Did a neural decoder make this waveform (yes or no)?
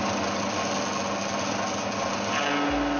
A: no